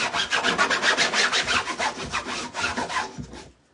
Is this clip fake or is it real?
real